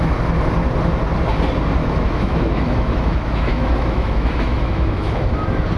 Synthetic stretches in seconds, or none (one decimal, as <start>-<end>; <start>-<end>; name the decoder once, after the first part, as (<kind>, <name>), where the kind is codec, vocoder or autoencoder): 1.8-5.3 (autoencoder, DAC-VAE)